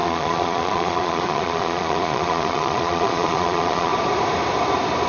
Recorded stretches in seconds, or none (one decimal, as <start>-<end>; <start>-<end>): 3.9-5.1